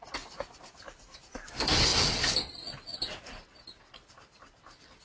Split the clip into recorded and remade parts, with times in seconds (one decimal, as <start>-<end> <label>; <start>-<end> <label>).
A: 0.0-5.0 recorded